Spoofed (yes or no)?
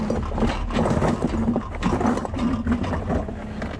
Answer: no